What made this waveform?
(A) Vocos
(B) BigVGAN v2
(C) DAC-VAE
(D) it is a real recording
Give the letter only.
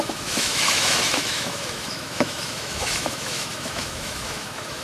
C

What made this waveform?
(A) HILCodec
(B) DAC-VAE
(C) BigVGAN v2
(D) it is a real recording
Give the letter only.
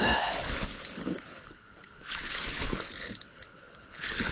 A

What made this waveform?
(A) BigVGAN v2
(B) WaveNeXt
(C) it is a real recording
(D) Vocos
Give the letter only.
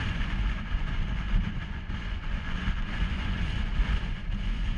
D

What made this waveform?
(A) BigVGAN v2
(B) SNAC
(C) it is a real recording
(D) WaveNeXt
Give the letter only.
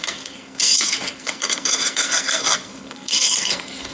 B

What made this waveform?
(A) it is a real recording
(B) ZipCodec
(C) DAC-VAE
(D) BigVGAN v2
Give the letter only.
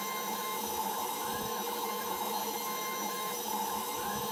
C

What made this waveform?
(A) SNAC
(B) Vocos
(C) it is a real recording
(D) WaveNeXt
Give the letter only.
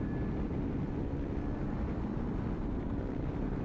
C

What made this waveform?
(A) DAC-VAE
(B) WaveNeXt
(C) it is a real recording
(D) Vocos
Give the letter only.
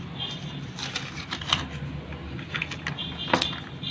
C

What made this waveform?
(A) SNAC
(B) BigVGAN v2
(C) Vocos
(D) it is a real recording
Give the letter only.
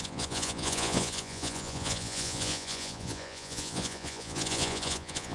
C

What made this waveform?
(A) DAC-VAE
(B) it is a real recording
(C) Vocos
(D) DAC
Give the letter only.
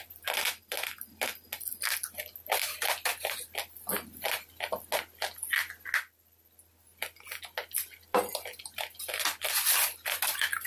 B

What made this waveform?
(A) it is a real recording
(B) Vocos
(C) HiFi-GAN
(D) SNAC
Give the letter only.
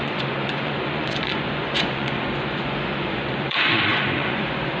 B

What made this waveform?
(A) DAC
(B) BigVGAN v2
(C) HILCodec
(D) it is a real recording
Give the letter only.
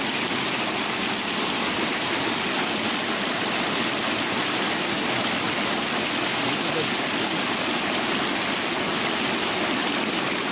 D